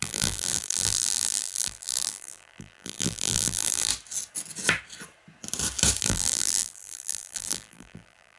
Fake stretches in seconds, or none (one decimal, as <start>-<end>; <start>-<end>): 0.0-3.9; 6.0-8.4